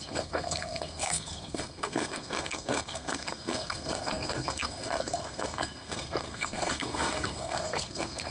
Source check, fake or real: fake